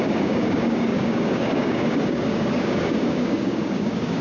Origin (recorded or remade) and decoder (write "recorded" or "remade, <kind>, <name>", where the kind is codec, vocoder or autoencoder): remade, codec, DAC